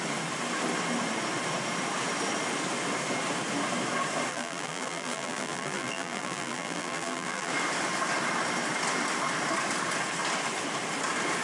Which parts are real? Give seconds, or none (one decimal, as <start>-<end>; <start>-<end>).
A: 0.0-4.3; 7.5-11.4

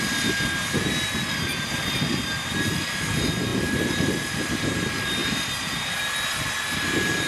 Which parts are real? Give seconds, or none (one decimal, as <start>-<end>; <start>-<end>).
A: 0.0-7.3

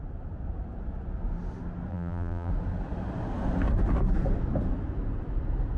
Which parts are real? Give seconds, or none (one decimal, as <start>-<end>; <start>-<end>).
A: 0.0-1.9; 2.5-5.8